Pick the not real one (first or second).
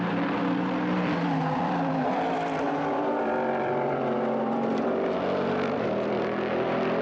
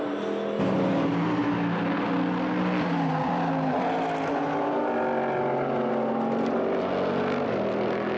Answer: first